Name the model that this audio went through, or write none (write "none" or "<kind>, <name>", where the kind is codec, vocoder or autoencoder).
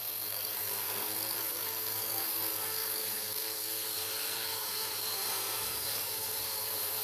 codec, SNAC